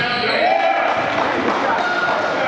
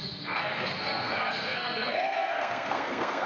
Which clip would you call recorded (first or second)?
first